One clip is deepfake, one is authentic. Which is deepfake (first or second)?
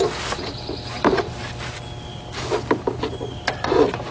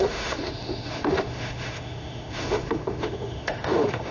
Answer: second